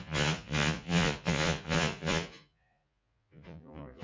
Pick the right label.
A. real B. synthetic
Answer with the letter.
B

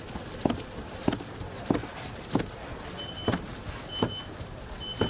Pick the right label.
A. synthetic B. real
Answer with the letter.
B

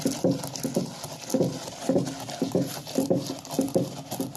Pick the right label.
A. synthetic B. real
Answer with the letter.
B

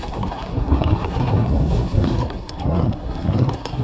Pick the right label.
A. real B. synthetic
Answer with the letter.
B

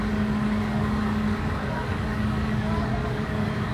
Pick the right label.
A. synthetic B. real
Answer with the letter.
A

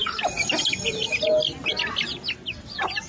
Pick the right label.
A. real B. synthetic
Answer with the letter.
A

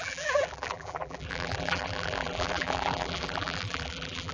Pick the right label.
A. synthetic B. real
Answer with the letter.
A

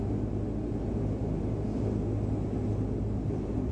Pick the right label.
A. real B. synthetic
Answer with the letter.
A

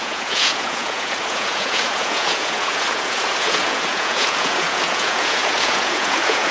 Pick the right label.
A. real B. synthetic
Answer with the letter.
B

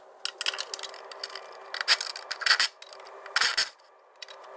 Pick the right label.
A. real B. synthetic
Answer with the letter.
A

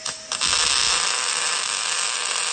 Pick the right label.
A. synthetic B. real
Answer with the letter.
B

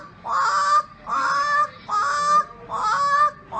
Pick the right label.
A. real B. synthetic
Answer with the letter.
A